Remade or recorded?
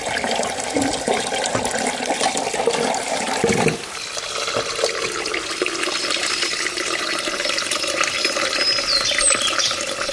recorded